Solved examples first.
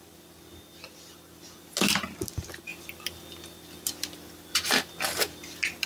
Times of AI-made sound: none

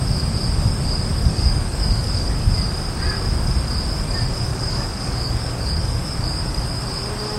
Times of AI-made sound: 1.1-2.5 (codec, DAC); 4.5-7.0

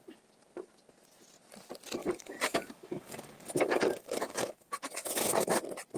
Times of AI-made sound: 2.0-5.6 (codec, DAC)

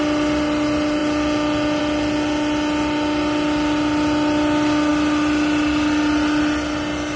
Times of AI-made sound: none

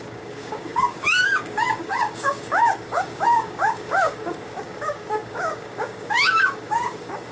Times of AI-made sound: 0.0-7.3 (codec, DAC)

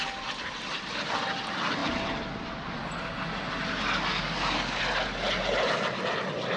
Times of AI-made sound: 4.1-4.8 (codec, DAC)